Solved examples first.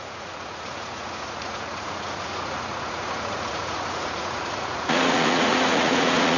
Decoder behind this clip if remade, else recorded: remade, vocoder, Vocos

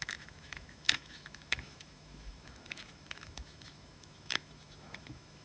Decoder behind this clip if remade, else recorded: remade, autoencoder, DAC-VAE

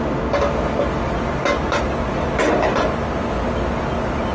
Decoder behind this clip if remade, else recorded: recorded